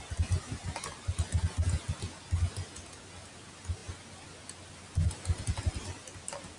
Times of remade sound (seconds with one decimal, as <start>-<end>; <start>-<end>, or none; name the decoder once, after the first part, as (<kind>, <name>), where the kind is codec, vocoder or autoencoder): none

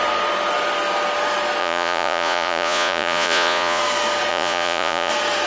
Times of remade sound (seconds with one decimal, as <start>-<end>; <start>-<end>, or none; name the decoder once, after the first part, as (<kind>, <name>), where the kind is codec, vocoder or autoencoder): 1.6-3.8 (vocoder, Vocos); 4.3-5.1